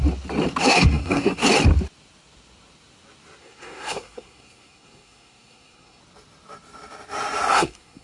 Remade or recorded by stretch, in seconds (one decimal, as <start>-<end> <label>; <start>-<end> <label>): 0.0-0.6 recorded; 0.6-1.4 remade; 1.4-3.4 recorded; 3.4-6.0 remade; 6.0-7.5 recorded; 7.5-8.0 remade